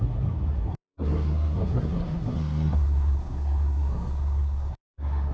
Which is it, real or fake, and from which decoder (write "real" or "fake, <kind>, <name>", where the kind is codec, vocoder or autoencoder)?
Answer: fake, codec, SNAC